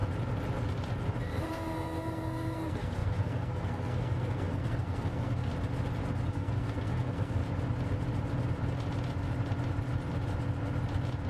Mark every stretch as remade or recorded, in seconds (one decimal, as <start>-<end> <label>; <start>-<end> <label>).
0.0-1.5 recorded; 1.5-5.5 remade; 5.5-6.3 recorded; 6.3-7.4 remade; 7.4-11.3 recorded